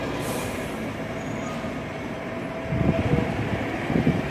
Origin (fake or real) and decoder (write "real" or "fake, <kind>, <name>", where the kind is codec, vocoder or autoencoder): fake, vocoder, BigVGAN v2